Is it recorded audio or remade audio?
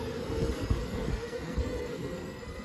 remade